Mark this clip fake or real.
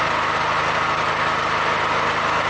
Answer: real